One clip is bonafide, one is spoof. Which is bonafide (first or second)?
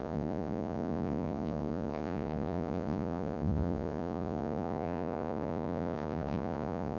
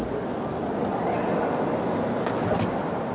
second